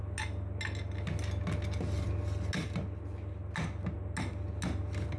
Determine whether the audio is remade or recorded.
recorded